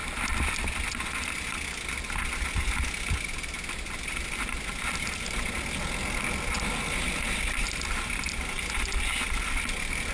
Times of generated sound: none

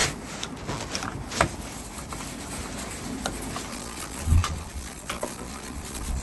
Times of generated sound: 3.7-6.2 (vocoder, Vocos)

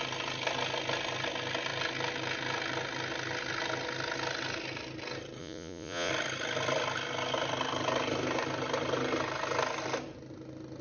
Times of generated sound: 5.4-6.1 (vocoder, Vocos)